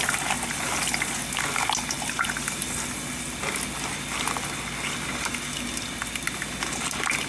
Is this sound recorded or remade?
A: recorded